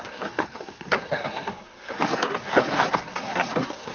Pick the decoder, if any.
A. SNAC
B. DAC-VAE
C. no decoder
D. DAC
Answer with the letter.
A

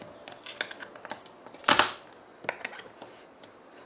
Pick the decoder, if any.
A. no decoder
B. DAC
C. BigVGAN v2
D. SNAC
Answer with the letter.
A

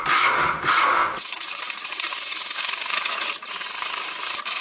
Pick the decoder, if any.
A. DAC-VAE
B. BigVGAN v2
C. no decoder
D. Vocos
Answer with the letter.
B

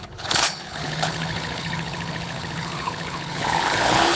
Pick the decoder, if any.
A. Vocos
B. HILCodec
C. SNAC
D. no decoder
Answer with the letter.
B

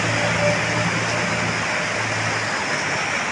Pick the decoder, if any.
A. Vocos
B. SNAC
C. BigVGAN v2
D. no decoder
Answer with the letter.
D